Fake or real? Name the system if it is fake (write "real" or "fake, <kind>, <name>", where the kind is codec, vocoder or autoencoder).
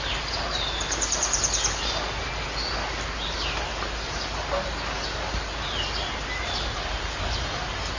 real